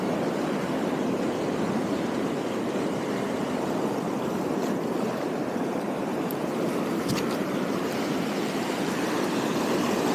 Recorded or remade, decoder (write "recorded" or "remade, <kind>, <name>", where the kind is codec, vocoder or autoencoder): remade, vocoder, BigVGAN v2